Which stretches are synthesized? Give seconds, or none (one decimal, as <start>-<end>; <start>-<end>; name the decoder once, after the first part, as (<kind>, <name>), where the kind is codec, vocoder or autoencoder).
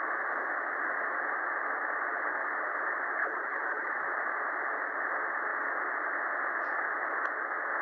3.2-3.9 (codec, HILCodec)